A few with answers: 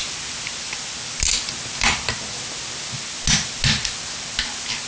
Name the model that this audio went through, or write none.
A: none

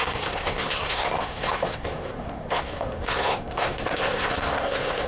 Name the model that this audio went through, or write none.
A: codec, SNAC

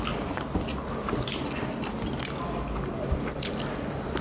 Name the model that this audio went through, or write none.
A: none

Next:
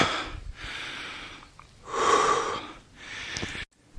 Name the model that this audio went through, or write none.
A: none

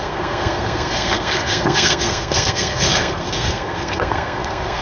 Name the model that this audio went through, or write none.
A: codec, SNAC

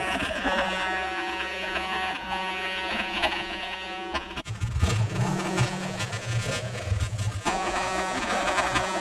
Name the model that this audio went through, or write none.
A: vocoder, Vocos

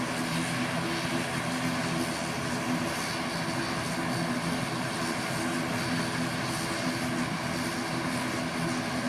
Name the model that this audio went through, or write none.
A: none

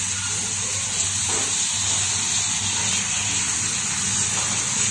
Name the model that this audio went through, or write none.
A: none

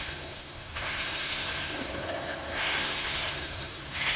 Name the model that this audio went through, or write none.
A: codec, SNAC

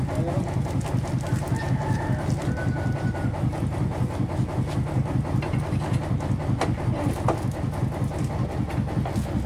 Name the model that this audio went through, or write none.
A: none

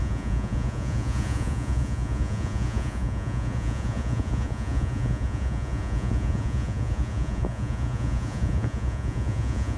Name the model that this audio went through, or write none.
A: vocoder, Vocos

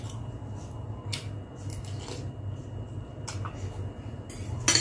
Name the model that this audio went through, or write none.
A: none